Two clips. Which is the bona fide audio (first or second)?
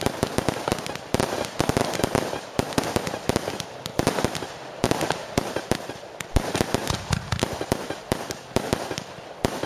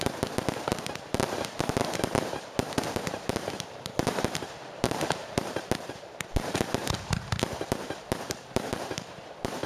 first